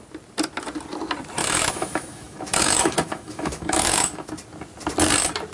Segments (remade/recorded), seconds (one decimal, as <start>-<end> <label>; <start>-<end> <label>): 0.0-1.4 recorded; 1.4-4.3 remade; 4.3-5.5 recorded